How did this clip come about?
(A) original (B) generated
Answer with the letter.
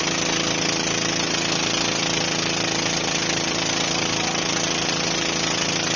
A